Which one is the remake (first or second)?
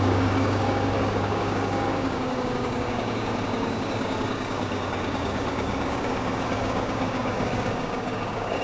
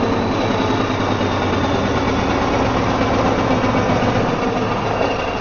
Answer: first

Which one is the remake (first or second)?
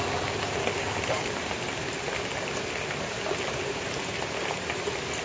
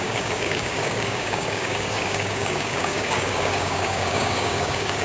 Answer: second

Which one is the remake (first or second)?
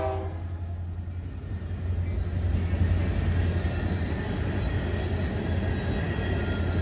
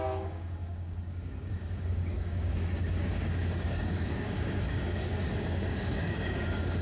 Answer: second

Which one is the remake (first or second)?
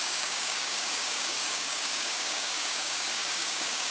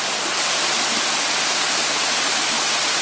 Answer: first